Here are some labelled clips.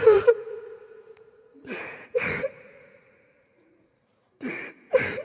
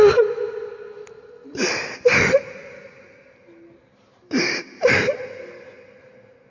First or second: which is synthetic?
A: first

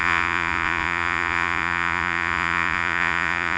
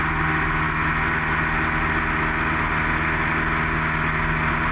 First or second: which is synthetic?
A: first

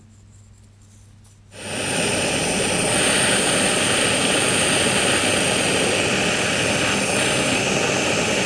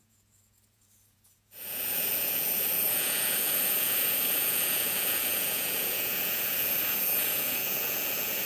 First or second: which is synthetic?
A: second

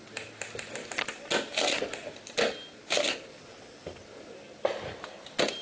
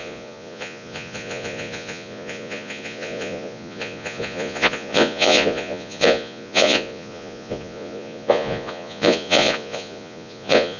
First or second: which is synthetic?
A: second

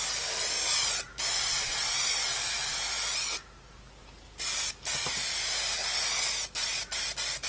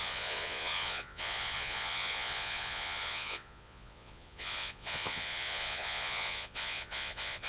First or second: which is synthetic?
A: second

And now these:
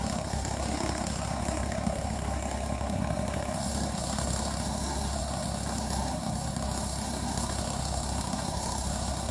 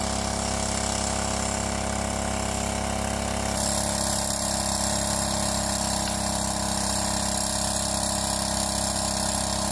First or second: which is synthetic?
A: first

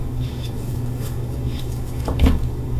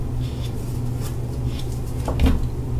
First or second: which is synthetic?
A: first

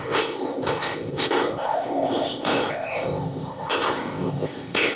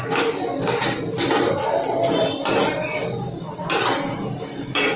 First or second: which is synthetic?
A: first